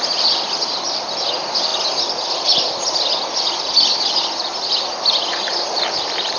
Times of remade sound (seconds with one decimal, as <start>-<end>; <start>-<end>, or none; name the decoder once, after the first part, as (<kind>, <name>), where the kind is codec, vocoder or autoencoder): none